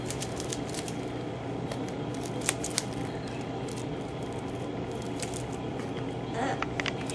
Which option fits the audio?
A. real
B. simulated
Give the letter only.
A